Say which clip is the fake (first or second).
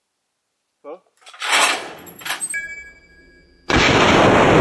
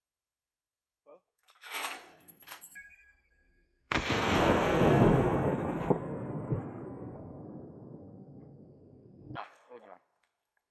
second